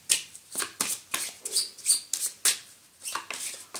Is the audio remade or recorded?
recorded